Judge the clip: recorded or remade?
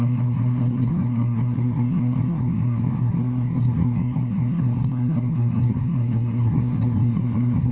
remade